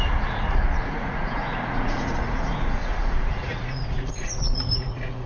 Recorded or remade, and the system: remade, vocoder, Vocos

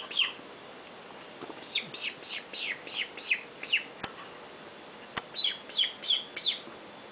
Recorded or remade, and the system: recorded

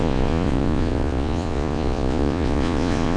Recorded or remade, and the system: remade, vocoder, Vocos